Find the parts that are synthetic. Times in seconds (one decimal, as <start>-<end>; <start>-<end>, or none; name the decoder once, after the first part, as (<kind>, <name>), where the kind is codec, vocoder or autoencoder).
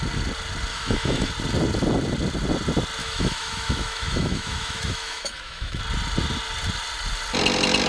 0.7-1.3 (autoencoder, DAC-VAE); 3.0-5.8